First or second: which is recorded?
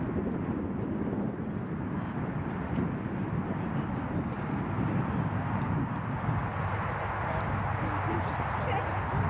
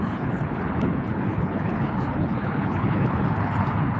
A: first